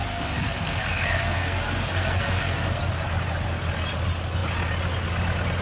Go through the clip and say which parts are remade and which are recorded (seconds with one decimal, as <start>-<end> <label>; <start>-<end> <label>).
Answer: 0.0-2.8 remade; 2.8-5.6 recorded